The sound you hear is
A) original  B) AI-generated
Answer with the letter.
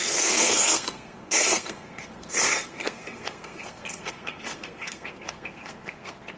B